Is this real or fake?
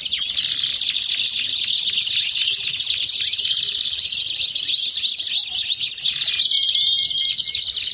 real